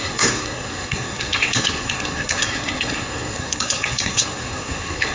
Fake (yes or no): yes